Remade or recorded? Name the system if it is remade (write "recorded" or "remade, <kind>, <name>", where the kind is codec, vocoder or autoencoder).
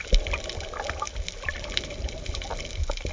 recorded